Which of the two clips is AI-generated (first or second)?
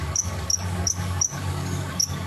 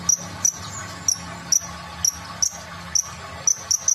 first